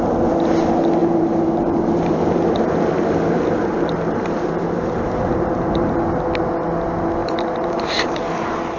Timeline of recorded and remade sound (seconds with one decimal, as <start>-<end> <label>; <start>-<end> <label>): 0.0-1.0 recorded; 1.0-5.9 remade; 5.9-7.2 recorded; 7.2-8.2 remade; 8.2-8.8 recorded